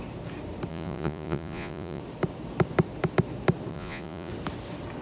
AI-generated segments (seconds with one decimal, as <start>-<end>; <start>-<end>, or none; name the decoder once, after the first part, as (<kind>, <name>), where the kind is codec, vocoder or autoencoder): 0.7-2.0 (vocoder, Vocos); 3.7-4.3